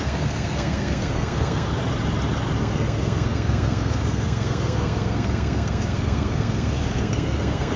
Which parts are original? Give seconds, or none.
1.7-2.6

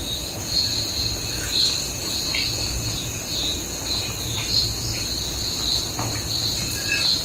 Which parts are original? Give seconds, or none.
0.0-7.2

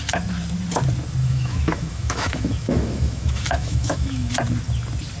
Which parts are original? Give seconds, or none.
0.0-1.2; 4.3-5.2

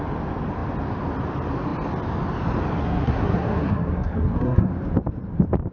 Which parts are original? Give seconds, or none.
0.0-2.8; 4.7-5.7

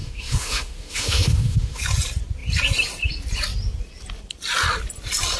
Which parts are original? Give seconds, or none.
1.8-5.4

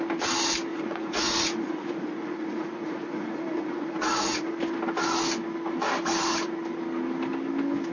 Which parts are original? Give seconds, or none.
0.0-0.7; 4.5-7.9

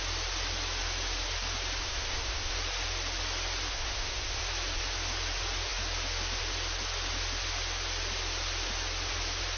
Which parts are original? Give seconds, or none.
0.0-1.8; 2.5-3.7; 4.4-9.6

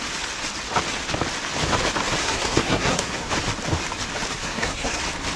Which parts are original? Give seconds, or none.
0.0-2.2; 3.3-4.4; 5.0-5.4